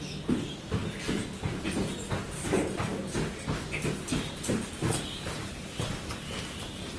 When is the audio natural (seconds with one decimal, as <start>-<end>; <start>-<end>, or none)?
0.0-7.0